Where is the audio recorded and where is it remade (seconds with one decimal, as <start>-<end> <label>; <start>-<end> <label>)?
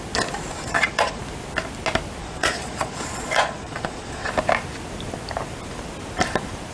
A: 0.0-0.5 recorded; 0.5-1.2 remade; 1.2-2.2 recorded; 2.2-4.3 remade; 4.3-6.7 recorded